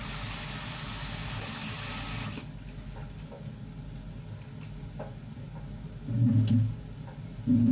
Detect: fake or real real